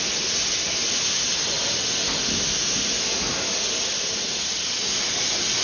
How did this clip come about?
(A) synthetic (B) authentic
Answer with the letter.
B